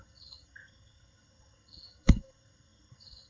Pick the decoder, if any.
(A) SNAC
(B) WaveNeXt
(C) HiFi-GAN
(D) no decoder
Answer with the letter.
A